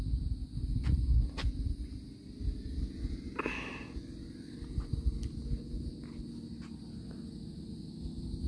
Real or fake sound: real